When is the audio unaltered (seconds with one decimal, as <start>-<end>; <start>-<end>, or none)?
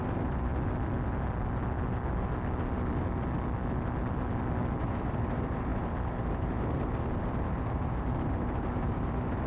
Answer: 0.5-4.8